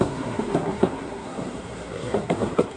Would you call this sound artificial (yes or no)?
yes